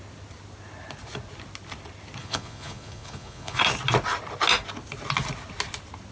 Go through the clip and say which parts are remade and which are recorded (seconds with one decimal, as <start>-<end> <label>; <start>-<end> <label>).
0.0-2.2 recorded; 2.2-3.6 remade; 3.6-6.1 recorded